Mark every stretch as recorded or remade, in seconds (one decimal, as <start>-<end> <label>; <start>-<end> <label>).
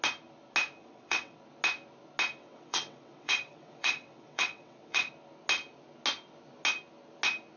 0.0-0.8 recorded; 0.8-1.4 remade; 1.4-2.4 recorded; 2.4-5.1 remade; 5.1-7.6 recorded